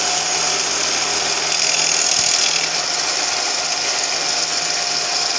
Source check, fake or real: real